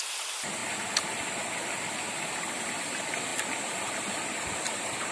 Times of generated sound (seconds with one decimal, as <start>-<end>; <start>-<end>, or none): none